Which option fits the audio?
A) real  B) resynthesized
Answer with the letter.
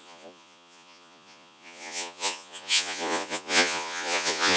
B